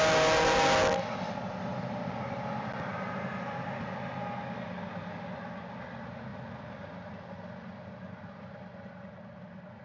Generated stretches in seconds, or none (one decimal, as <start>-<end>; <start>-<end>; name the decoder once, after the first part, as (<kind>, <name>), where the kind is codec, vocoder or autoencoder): none